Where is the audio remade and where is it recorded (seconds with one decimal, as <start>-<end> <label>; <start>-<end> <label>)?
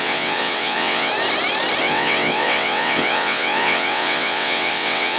0.0-1.1 remade; 1.1-1.8 recorded; 1.8-5.2 remade